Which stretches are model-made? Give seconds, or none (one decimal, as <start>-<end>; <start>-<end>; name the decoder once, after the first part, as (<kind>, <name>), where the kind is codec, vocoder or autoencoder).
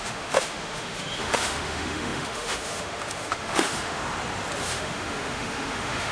0.0-4.0 (autoencoder, DAC-VAE); 4.6-6.1